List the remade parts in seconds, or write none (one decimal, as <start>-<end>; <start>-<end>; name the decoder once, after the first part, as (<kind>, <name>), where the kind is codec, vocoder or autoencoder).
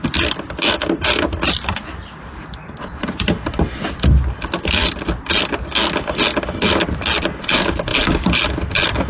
none